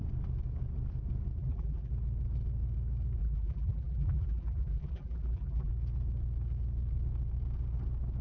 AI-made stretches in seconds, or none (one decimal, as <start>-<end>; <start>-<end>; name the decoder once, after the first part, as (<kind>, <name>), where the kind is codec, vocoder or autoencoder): 1.4-1.9 (vocoder, BigVGAN v2); 3.2-5.7